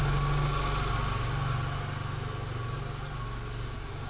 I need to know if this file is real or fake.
real